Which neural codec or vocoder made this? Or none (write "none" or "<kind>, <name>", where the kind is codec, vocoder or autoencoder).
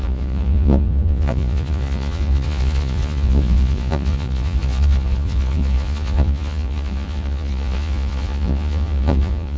vocoder, Vocos